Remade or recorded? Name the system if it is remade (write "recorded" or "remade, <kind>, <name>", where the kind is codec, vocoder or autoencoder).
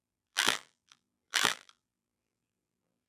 remade, vocoder, BigVGAN v2